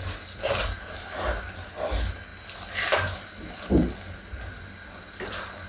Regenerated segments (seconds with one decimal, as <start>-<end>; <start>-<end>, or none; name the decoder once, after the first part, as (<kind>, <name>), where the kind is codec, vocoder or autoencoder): none